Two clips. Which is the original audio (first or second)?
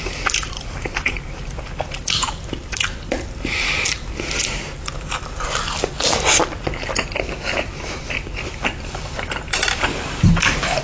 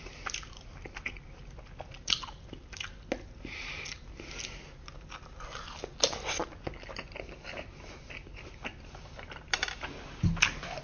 second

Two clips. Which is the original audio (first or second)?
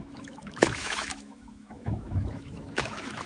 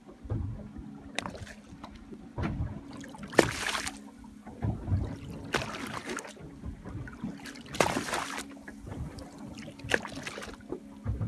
second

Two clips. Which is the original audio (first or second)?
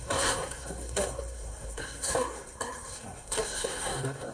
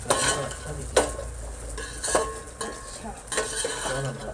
second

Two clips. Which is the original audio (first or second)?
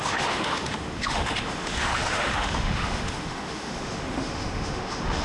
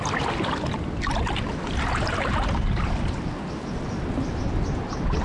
second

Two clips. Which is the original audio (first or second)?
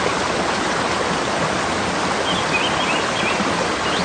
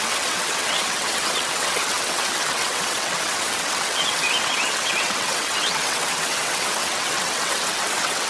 first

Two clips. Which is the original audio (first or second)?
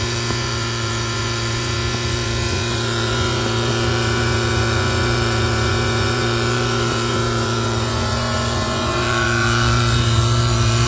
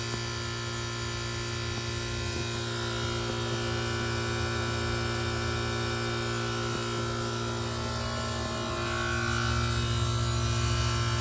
second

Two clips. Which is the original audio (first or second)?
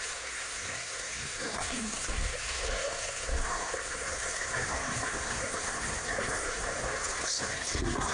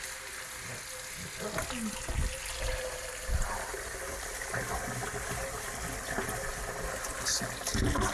second